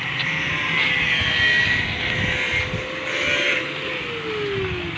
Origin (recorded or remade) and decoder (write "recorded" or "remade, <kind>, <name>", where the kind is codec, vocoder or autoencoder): recorded